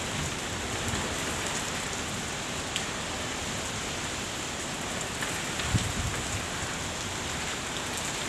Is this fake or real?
real